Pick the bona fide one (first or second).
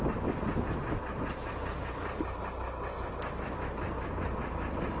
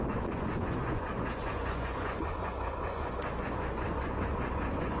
first